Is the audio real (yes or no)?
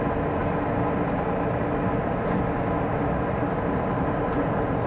yes